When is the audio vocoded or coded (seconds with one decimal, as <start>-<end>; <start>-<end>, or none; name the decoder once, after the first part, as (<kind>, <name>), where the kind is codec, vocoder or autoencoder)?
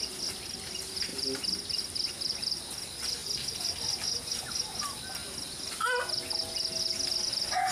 none